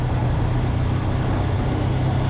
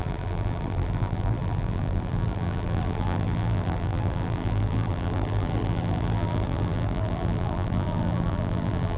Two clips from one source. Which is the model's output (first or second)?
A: second